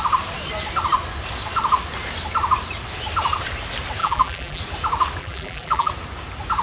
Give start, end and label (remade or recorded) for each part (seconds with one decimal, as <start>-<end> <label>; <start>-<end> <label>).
0.0-4.0 recorded; 4.0-4.6 remade; 4.6-5.2 recorded; 5.2-5.9 remade; 5.9-6.6 recorded